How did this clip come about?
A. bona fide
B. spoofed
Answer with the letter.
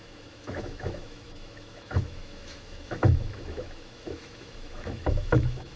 B